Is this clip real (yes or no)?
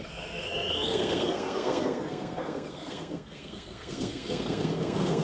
no